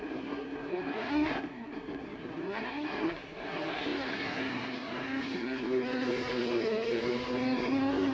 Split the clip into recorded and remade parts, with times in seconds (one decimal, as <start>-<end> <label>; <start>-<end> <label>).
0.0-8.1 remade